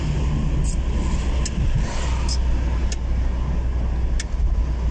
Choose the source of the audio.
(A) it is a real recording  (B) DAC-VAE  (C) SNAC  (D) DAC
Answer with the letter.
A